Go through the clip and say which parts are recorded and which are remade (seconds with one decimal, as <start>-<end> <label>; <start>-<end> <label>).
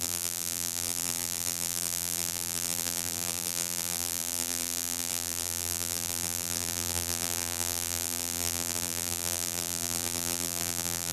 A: 0.0-11.1 remade